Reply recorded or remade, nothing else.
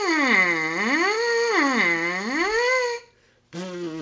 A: recorded